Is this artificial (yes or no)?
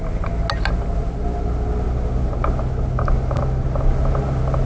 no